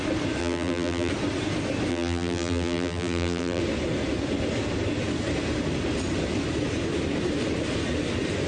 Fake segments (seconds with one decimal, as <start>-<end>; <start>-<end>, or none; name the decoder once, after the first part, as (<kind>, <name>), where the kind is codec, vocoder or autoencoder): 0.4-1.1 (vocoder, BigVGAN v2); 1.9-3.6